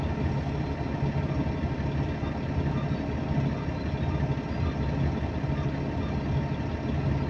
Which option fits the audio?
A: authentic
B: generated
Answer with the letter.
A